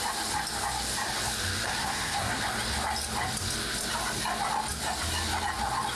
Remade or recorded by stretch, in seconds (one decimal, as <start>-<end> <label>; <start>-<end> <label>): 0.0-1.8 recorded; 1.8-2.4 remade; 2.4-6.0 recorded